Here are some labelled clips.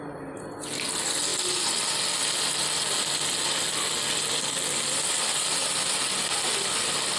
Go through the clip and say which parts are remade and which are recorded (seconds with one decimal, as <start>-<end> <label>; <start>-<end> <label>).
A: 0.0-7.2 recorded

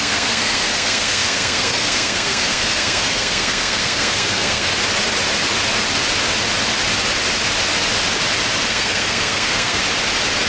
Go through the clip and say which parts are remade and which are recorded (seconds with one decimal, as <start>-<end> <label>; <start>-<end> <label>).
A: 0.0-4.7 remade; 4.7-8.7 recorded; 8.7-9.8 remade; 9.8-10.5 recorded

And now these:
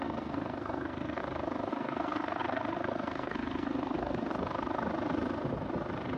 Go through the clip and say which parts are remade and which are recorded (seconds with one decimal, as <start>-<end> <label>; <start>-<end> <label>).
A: 0.0-1.2 remade; 1.2-1.7 recorded; 1.7-4.3 remade; 4.3-6.2 recorded